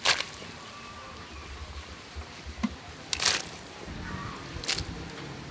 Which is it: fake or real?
real